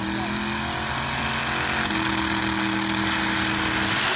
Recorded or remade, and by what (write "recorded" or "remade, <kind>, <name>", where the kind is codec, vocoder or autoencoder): recorded